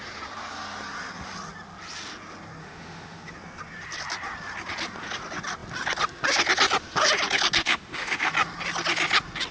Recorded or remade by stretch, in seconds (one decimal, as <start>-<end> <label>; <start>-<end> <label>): 0.0-2.6 recorded; 2.6-3.3 remade; 3.3-7.6 recorded; 7.6-8.3 remade; 8.3-9.5 recorded